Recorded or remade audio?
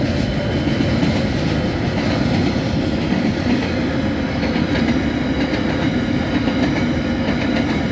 recorded